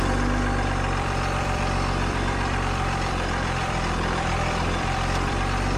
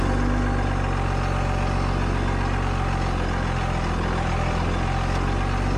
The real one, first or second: second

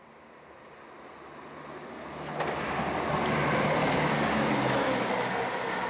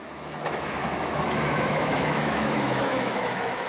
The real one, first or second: first